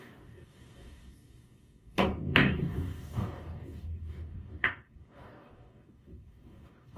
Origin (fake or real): fake